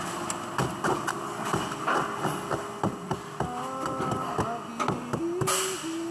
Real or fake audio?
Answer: real